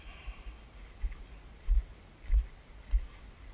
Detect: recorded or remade recorded